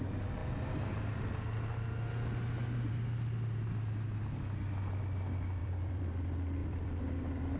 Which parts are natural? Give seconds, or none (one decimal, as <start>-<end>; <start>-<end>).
0.0-5.6; 6.1-6.6